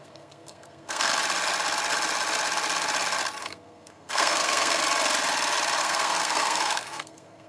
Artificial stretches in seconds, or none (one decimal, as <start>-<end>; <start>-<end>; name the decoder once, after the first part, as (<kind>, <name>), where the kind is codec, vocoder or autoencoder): 0.0-1.1 (codec, SNAC); 3.4-4.8; 5.8-7.5